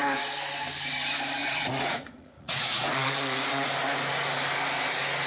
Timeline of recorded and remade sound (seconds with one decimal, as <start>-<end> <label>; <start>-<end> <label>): 0.0-1.4 recorded; 1.4-3.7 remade; 3.7-5.3 recorded